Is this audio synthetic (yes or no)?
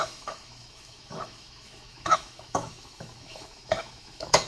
yes